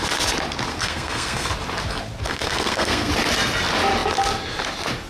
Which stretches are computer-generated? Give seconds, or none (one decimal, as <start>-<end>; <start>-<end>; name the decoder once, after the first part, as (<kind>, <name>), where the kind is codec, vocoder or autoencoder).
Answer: 0.7-1.5 (codec, SNAC); 2.3-3.1